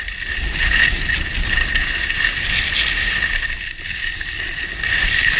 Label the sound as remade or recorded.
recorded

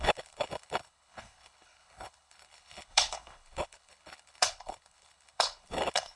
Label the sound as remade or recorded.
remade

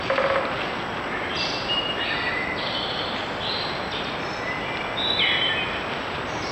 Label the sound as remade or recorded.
remade